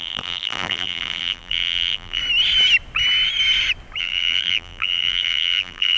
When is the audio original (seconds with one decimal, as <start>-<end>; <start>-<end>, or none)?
2.2-4.0